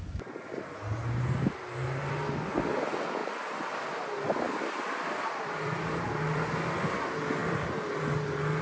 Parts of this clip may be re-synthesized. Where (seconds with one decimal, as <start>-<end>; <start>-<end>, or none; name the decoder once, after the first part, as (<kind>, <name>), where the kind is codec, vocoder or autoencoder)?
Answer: 3.2-6.5 (vocoder, BigVGAN v2); 7.4-8.0